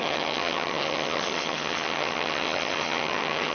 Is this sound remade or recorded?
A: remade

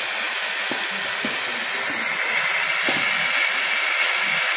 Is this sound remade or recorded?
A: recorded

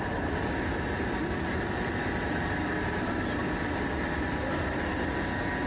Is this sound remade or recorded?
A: recorded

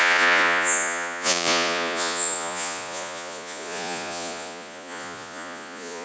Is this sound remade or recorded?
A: remade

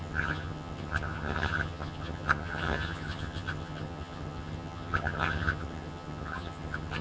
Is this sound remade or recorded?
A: remade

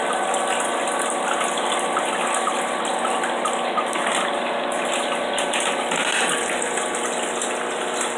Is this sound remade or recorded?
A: recorded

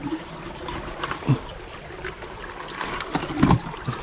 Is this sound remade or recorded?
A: recorded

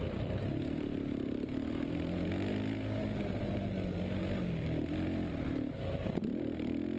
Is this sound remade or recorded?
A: recorded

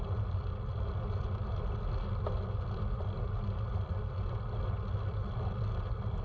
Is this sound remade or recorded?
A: recorded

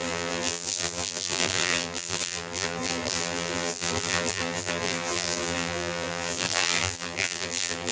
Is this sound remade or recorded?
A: remade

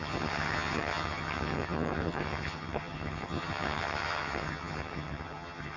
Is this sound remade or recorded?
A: remade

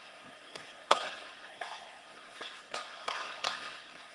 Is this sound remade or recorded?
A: remade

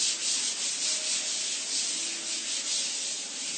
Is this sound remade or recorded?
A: recorded